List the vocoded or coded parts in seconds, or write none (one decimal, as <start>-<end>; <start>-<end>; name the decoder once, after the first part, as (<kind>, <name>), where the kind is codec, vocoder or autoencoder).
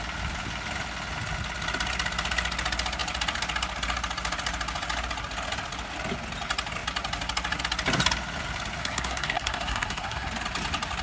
8.8-10.3 (codec, SNAC)